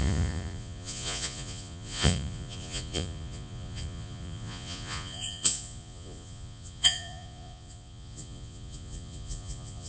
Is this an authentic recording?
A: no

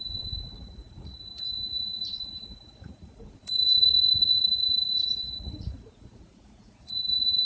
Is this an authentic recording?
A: no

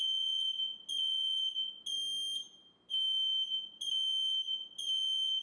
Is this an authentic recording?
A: yes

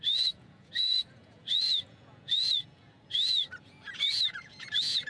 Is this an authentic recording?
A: no